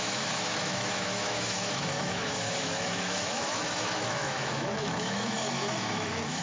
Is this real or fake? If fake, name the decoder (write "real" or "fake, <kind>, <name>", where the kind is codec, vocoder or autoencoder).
fake, autoencoder, DAC-VAE